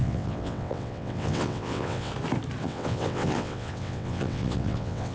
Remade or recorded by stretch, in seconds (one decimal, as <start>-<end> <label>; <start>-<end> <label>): 0.0-2.1 remade; 2.1-2.6 recorded; 2.6-5.1 remade